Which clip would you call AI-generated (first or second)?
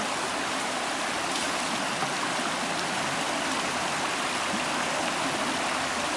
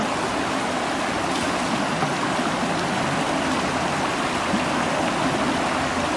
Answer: first